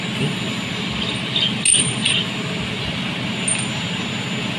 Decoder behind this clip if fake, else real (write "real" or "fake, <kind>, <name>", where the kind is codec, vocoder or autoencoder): real